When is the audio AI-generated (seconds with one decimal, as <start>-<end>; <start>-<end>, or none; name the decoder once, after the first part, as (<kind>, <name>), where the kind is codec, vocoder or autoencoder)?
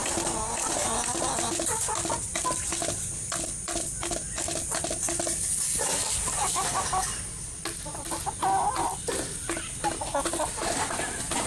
none